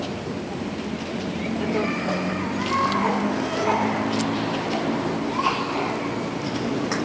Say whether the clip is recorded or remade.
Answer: recorded